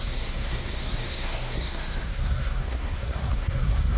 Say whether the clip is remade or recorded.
remade